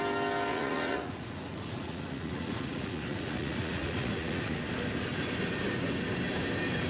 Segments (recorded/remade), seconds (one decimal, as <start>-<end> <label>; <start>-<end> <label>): 0.0-0.5 recorded; 0.5-4.6 remade; 4.6-6.9 recorded